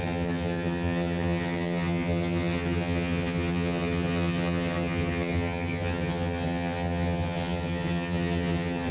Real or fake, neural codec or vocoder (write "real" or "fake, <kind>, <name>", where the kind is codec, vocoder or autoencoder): fake, vocoder, HiFi-GAN